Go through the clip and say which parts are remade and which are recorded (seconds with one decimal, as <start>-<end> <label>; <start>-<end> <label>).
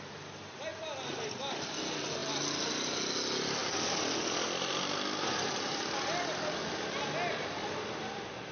0.0-8.5 recorded